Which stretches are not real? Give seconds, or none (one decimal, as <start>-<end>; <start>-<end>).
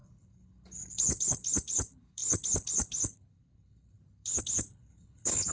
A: 0.0-5.5